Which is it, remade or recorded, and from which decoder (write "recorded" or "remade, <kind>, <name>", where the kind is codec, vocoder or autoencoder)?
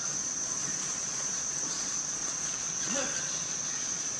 remade, vocoder, Vocos